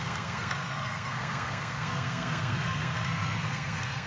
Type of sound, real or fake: fake